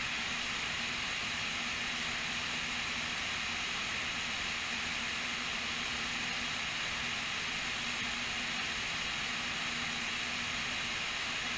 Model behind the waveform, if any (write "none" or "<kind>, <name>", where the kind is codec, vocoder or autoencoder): none